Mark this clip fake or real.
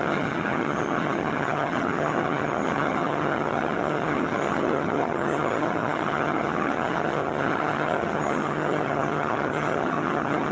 fake